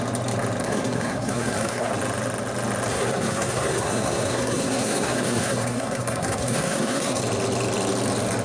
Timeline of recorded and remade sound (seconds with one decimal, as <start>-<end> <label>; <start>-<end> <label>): 0.0-0.6 recorded; 0.6-1.9 remade; 1.9-2.9 recorded; 2.9-7.2 remade; 7.2-8.4 recorded